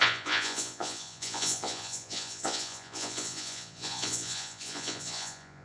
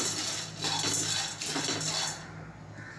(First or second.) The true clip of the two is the second